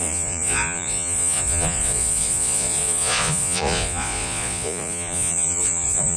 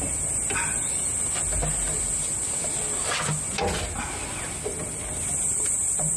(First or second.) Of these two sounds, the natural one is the second